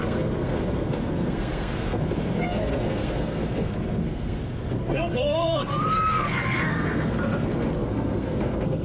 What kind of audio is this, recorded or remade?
remade